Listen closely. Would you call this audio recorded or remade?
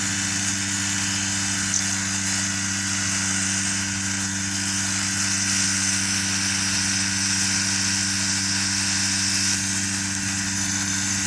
recorded